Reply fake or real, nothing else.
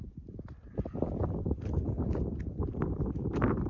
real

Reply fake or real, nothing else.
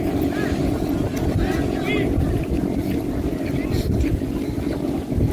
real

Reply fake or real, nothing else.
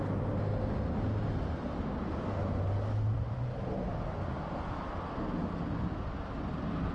real